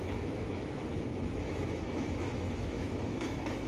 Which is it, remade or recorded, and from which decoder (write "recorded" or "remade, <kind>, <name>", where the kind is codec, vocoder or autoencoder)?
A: remade, autoencoder, DAC-VAE